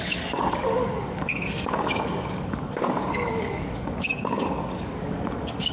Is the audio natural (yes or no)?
no